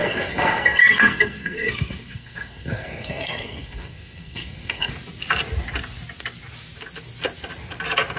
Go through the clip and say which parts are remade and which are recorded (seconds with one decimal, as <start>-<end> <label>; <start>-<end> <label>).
0.0-4.9 remade; 4.9-8.2 recorded